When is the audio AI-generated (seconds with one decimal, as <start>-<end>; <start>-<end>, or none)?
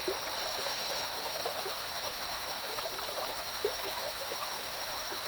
0.5-2.8; 3.3-5.3